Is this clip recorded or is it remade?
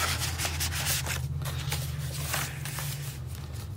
recorded